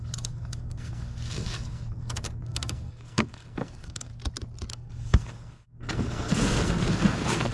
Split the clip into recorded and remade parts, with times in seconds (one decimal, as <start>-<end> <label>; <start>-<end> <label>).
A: 0.0-4.1 remade; 4.1-4.7 recorded; 4.7-7.5 remade